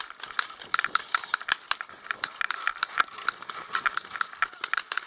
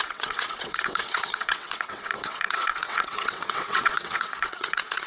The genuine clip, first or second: first